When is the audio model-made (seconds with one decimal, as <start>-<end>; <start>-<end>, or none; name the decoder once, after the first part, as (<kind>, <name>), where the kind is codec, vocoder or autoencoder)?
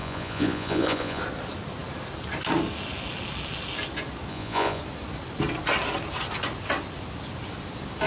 0.0-1.2 (vocoder, Vocos); 4.3-4.8